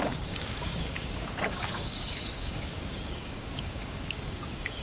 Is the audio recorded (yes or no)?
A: no